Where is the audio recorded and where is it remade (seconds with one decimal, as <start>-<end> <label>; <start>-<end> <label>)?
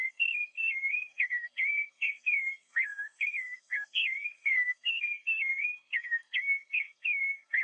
0.0-7.6 remade